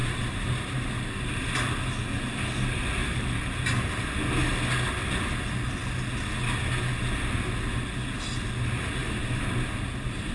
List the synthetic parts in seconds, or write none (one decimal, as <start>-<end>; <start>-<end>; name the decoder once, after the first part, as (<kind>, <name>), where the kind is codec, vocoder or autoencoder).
0.0-0.9 (vocoder, BigVGAN v2); 3.0-3.6; 9.0-9.5